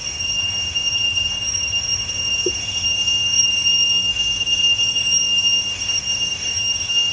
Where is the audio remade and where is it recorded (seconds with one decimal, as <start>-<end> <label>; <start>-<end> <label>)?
0.0-7.1 remade

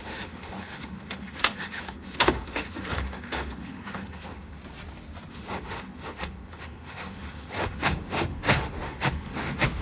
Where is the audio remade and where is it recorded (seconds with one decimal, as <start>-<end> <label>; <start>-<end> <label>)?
0.0-4.6 remade; 4.6-5.3 recorded; 5.3-9.8 remade

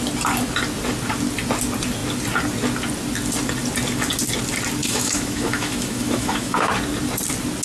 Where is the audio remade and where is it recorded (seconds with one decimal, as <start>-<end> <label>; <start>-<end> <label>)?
0.0-4.8 recorded; 4.8-6.7 remade; 6.7-7.6 recorded

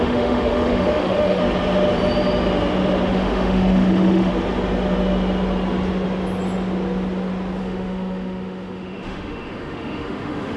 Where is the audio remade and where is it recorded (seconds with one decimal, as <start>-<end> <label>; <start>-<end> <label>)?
0.0-1.4 remade; 1.4-3.1 recorded; 3.1-4.3 remade; 4.3-7.6 recorded; 7.6-10.6 remade